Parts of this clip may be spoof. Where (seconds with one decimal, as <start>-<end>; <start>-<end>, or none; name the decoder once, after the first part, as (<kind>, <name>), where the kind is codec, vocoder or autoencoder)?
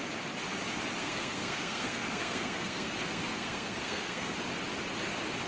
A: 1.0-4.3 (codec, SNAC)